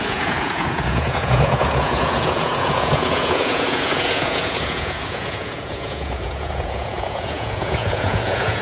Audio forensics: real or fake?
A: fake